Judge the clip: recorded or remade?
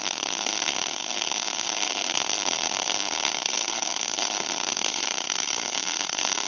remade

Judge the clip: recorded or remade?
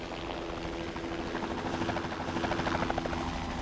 recorded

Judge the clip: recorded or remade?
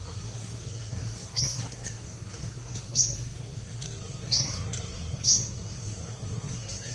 remade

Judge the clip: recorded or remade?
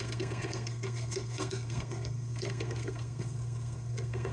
remade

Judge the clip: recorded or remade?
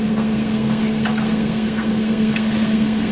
remade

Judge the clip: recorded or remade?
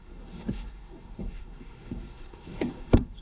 remade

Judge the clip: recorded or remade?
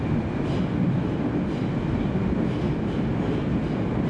recorded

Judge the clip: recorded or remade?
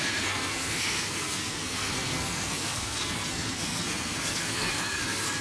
remade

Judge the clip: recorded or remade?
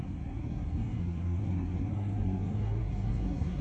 remade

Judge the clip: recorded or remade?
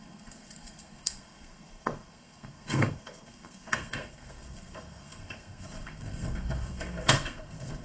remade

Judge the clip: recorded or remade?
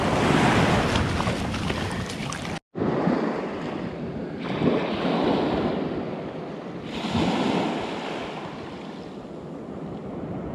recorded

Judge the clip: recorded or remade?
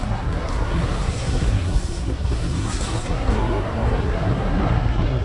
remade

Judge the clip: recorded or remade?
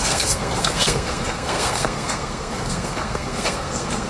remade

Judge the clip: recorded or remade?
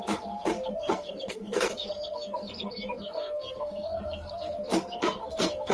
remade